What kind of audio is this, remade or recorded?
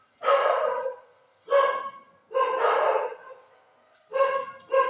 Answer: recorded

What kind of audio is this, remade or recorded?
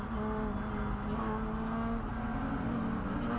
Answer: recorded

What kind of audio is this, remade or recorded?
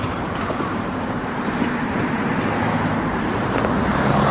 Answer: remade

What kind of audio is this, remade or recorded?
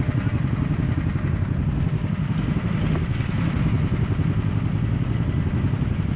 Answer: recorded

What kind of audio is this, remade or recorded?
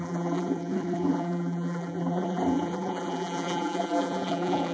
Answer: remade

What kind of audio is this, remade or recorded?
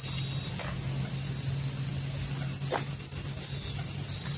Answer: recorded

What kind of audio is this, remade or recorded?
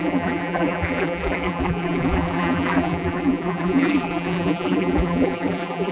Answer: remade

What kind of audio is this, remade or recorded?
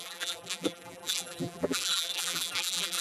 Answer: remade